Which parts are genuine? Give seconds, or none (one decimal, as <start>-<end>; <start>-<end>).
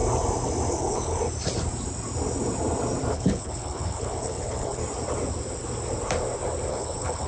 0.0-0.7; 1.2-3.1; 4.8-6.7